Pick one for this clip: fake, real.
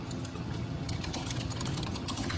fake